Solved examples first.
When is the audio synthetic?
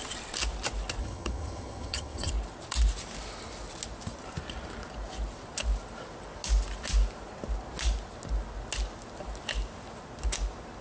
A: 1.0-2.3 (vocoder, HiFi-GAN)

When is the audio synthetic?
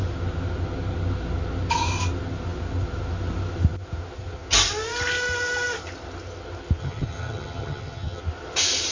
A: 6.8-8.2 (vocoder, HiFi-GAN)